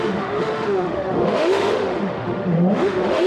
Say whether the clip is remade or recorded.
remade